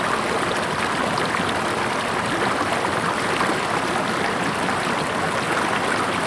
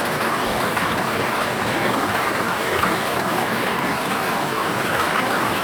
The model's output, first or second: second